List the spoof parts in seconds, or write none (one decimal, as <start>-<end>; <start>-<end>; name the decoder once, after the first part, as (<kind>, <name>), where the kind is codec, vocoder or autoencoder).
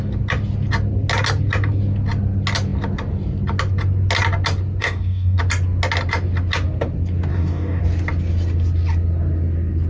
4.8-5.4 (codec, DAC); 7.3-7.8